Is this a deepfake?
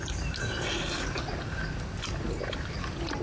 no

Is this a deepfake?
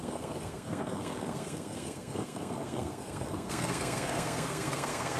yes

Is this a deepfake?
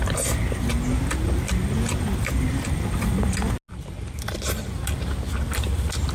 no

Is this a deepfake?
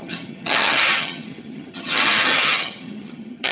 yes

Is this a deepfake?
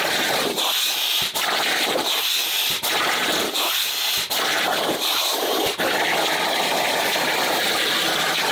no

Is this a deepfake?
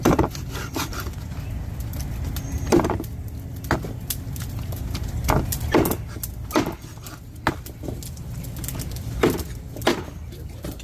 no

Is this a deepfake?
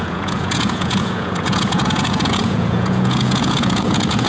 yes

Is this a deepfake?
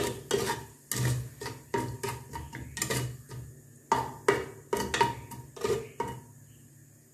no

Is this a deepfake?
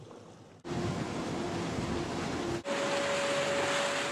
no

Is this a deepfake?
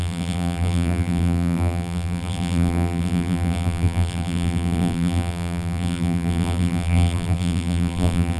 yes